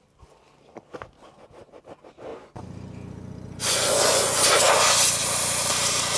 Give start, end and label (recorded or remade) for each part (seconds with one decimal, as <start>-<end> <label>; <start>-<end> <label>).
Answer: 0.0-2.3 recorded; 2.3-4.4 remade; 4.4-6.2 recorded